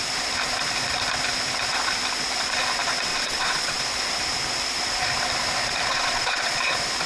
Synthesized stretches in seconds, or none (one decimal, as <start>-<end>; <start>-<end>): 3.1-3.8; 5.9-6.6